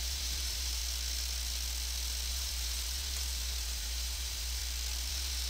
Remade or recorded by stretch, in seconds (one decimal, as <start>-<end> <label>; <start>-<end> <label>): 0.0-0.8 remade; 0.8-2.3 recorded; 2.3-4.6 remade; 4.6-5.1 recorded; 5.1-5.5 remade